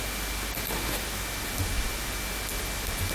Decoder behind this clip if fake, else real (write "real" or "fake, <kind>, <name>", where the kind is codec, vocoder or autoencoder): real